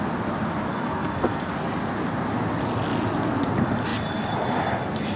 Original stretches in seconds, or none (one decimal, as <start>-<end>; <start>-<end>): 0.0-0.7; 1.5-5.2